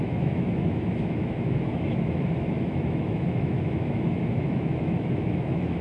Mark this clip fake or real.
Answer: fake